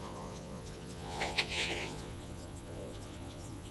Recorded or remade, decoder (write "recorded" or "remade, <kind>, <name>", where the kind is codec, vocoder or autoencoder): remade, vocoder, Vocos